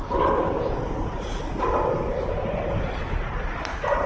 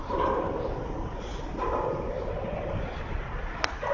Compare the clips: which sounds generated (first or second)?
second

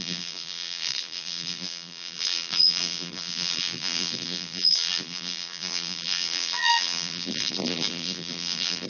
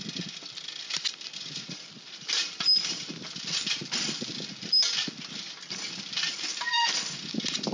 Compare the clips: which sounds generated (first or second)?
first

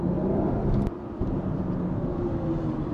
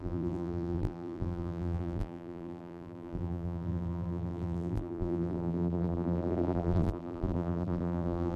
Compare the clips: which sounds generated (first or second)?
second